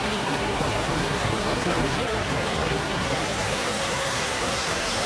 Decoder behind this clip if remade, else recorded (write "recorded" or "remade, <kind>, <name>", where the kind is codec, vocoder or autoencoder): remade, codec, SNAC